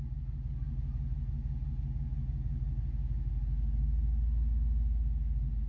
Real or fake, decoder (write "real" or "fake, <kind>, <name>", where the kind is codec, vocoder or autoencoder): real